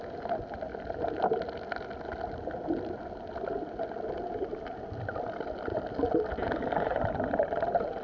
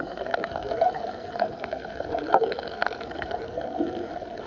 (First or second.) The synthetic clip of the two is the second